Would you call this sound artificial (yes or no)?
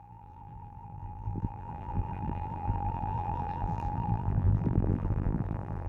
yes